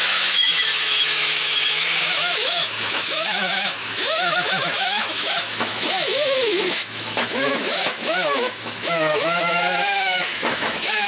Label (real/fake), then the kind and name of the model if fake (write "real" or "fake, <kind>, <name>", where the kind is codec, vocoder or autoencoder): fake, autoencoder, DAC-VAE